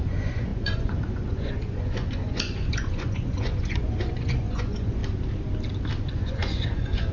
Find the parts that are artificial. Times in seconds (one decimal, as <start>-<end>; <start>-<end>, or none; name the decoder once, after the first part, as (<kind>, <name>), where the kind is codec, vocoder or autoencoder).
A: 0.0-5.0 (vocoder, Vocos); 6.1-7.1

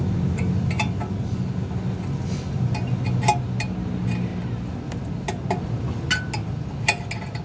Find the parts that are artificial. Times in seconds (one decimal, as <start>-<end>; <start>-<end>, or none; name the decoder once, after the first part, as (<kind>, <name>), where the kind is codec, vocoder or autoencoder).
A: none

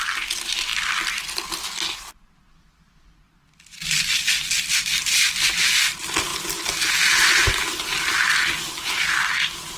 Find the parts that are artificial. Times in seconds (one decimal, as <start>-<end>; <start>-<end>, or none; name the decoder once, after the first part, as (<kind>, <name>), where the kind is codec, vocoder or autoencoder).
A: none

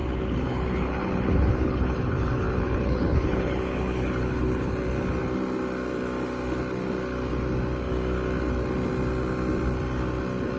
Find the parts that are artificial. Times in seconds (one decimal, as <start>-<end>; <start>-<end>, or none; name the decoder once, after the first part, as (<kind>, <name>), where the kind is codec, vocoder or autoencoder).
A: 0.0-4.7 (codec, HILCodec)

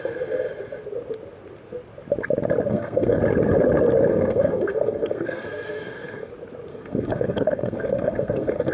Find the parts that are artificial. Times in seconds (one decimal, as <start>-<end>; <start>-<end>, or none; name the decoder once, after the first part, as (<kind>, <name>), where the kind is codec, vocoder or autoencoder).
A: 2.7-3.2 (codec, SNAC); 4.1-6.3; 6.7-8.7

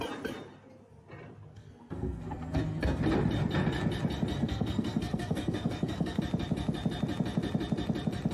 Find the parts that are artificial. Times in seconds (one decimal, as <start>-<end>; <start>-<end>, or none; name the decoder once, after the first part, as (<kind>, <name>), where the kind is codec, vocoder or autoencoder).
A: 1.5-3.0 (codec, SNAC); 4.4-6.2

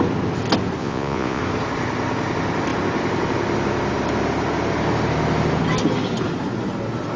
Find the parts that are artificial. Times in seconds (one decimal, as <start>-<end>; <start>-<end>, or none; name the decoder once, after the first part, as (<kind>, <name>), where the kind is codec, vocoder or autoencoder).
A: 0.8-1.4 (vocoder, Vocos)

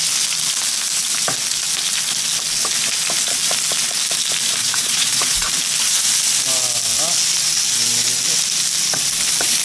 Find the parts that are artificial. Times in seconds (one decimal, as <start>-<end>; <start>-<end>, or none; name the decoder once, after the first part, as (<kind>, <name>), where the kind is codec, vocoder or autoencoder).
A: 4.6-5.5 (vocoder, Vocos)